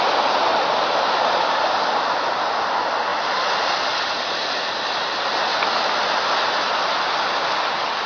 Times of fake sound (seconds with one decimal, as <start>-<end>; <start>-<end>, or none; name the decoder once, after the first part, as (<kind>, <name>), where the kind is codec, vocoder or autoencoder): 0.5-1.8 (vocoder, BigVGAN v2)

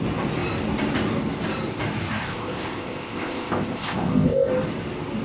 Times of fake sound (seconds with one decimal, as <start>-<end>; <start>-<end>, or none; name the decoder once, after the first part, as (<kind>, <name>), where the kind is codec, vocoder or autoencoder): 2.2-4.5 (codec, ZipCodec)

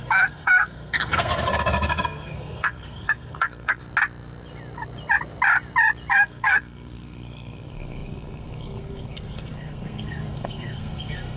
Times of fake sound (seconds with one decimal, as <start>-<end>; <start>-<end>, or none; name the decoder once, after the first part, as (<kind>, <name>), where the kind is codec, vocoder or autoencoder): 0.0-3.8 (codec, SNAC); 6.1-11.4

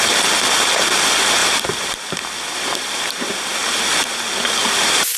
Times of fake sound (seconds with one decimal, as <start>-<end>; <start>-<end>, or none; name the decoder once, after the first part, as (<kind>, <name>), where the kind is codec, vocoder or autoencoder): none

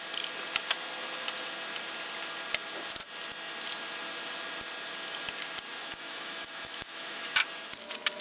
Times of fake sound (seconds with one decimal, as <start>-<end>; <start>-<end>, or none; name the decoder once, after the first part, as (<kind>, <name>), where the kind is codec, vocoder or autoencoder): 5.8-7.2 (autoencoder, DAC-VAE)

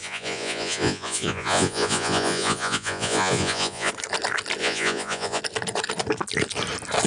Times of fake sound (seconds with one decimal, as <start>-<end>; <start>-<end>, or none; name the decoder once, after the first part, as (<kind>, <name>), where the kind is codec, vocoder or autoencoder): 0.0-3.9 (vocoder, Vocos); 4.6-5.4

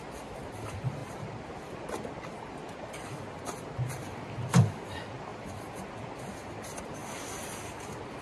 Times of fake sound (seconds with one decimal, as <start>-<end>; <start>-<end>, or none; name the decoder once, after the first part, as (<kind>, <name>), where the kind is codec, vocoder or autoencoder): 1.0-4.7 (vocoder, BigVGAN v2); 5.3-6.6

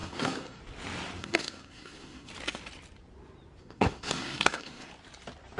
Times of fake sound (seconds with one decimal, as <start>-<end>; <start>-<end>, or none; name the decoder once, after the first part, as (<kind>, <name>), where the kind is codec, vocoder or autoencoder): 0.0-0.6 (codec, SNAC); 1.2-2.3; 3.6-4.9